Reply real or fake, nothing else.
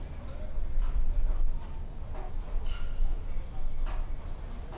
real